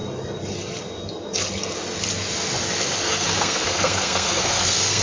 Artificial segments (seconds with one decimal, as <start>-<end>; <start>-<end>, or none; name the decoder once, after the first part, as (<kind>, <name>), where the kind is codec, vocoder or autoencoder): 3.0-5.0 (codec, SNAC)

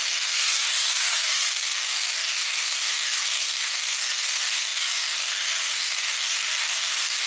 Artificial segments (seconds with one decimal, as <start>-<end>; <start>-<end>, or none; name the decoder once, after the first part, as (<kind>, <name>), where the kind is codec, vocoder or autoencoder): 0.0-7.3 (codec, DAC)

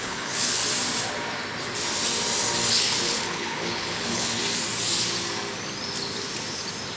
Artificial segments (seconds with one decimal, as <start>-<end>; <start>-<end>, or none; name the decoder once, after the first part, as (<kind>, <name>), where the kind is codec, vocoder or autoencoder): 0.0-0.6 (codec, HILCodec); 2.7-4.4

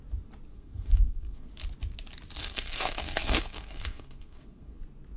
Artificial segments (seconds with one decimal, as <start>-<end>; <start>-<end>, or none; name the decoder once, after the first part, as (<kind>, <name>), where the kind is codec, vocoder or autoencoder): 0.5-1.5 (codec, SNAC); 2.4-4.8

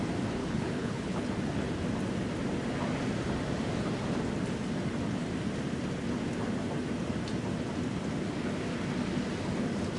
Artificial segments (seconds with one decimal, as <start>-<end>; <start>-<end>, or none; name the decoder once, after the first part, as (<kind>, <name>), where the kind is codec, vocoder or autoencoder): 0.4-1.3 (codec, HILCodec)